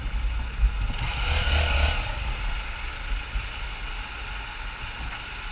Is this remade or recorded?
recorded